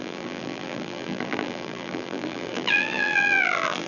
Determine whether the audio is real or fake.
fake